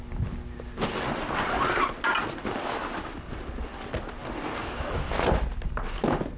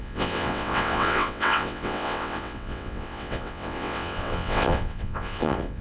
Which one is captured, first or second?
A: first